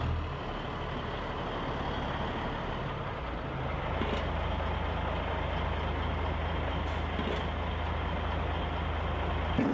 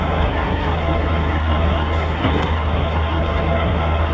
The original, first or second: first